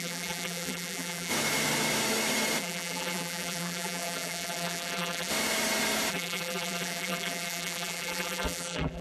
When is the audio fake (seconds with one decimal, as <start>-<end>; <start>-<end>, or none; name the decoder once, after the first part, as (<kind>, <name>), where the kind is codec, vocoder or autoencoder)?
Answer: 0.0-1.3 (vocoder, BigVGAN v2); 2.6-5.3; 6.1-9.0